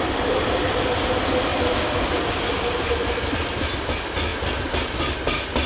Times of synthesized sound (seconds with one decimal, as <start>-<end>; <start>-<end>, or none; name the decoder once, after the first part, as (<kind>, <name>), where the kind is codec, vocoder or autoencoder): 1.5-2.9 (vocoder, BigVGAN v2)